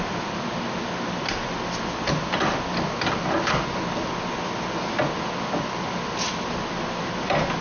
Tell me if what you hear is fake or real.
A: real